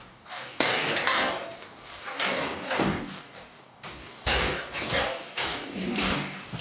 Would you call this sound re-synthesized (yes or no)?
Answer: yes